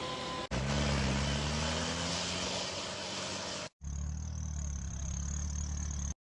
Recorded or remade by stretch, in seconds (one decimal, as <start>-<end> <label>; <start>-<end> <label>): 0.0-6.2 recorded